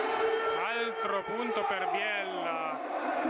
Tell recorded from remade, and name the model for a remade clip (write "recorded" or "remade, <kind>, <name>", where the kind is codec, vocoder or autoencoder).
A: recorded